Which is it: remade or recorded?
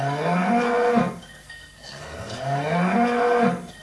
remade